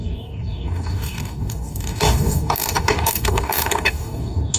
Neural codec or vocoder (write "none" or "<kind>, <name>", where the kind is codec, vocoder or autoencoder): codec, DAC